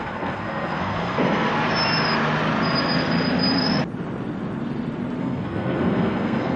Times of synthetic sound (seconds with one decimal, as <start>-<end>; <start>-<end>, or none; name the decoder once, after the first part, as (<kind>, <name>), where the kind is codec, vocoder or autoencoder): 0.0-1.5 (codec, SNAC); 5.2-6.6